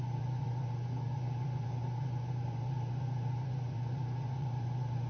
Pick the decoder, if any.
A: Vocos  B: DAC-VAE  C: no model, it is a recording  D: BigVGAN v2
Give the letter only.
A